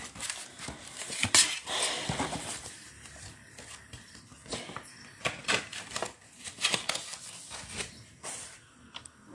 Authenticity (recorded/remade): recorded